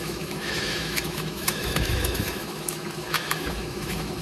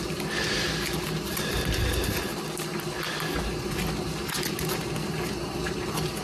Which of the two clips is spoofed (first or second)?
first